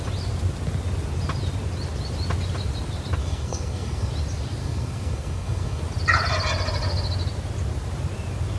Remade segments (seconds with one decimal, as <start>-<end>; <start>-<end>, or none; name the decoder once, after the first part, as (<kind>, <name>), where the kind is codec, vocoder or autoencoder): 3.2-4.1 (codec, SNAC); 4.6-5.8